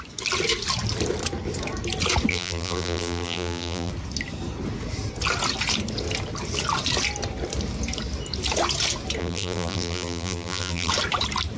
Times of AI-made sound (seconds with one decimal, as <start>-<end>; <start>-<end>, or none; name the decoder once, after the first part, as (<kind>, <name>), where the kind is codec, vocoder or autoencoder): 2.3-3.9 (vocoder, BigVGAN v2); 9.2-10.9